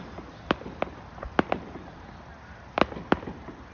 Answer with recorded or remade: recorded